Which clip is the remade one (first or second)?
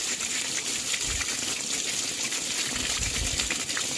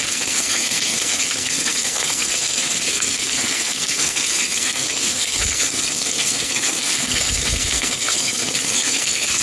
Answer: second